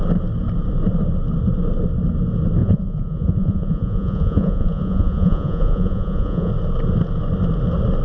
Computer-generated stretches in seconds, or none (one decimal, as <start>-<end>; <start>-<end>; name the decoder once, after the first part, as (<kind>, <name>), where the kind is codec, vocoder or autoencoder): 2.6-6.5 (vocoder, Vocos)